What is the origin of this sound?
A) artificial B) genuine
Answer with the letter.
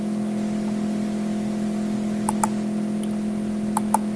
B